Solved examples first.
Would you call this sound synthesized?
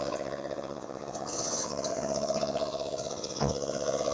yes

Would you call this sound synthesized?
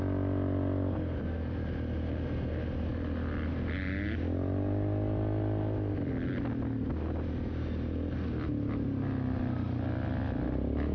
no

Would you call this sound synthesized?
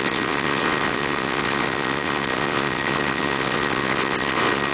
yes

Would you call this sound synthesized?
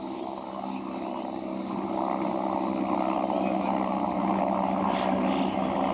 no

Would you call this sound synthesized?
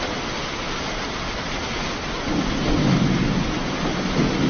no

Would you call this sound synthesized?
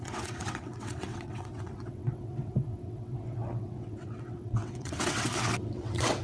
yes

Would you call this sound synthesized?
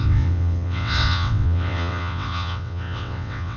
yes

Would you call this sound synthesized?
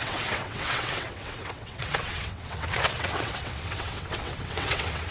yes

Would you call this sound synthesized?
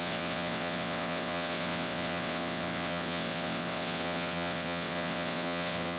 yes